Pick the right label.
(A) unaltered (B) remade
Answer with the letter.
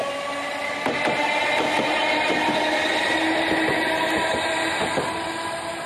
A